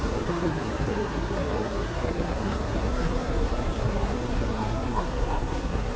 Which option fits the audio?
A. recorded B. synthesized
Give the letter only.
B